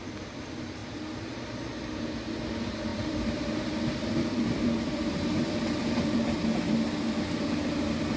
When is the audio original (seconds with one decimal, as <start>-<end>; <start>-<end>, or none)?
0.0-0.8; 1.8-2.9; 6.4-8.2